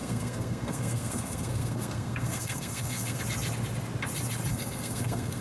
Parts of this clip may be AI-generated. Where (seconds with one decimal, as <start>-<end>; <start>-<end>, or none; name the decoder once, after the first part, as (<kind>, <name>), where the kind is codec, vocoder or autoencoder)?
0.0-3.2 (codec, SNAC); 4.5-5.4